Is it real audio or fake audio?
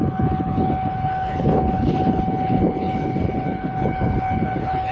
fake